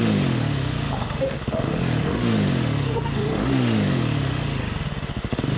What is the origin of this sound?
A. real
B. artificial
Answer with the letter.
B